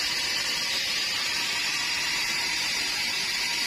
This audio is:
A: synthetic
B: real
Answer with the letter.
A